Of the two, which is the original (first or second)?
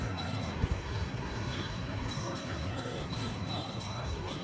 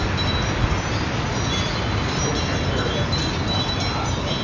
second